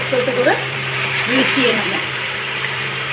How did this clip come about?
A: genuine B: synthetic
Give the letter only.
B